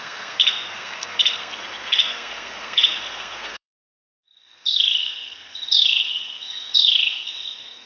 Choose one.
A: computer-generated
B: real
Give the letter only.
A